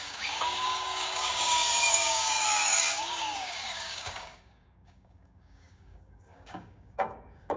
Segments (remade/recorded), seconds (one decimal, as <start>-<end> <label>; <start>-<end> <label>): 0.0-7.6 remade